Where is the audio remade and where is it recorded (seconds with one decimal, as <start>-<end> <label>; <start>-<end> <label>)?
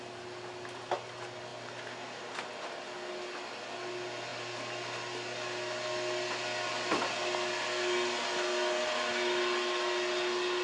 0.0-10.6 recorded